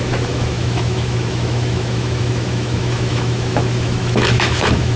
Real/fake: fake